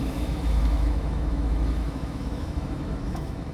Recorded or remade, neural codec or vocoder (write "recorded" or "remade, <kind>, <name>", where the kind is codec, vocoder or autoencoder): remade, autoencoder, DAC-VAE